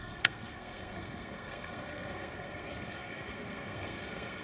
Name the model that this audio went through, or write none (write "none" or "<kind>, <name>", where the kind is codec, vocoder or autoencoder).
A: codec, SNAC